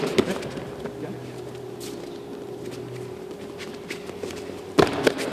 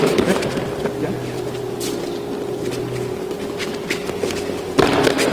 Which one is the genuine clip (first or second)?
second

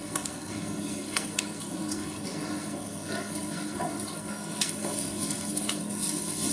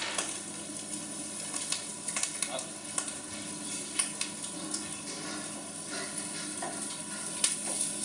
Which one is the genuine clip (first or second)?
second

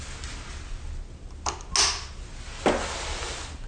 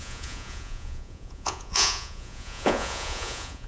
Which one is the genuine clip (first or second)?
first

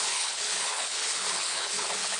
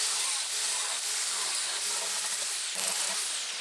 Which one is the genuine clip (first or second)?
second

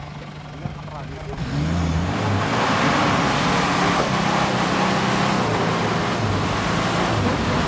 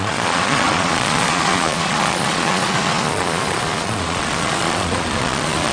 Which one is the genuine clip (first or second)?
first